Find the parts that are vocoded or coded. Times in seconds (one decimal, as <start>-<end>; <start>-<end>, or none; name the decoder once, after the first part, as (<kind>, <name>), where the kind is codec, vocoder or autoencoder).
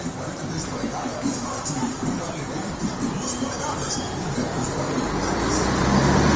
1.1-3.9 (vocoder, BigVGAN v2)